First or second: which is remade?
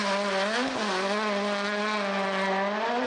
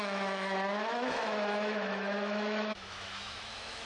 second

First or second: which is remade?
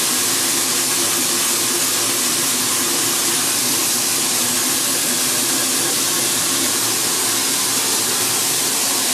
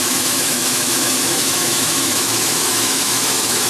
second